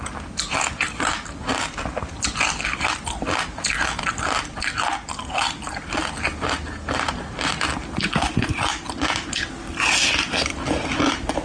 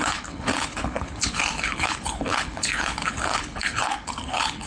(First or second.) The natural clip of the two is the first